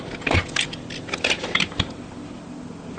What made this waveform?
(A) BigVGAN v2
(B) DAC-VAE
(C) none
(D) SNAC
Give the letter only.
C